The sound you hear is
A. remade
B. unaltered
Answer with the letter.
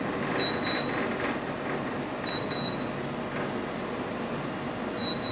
B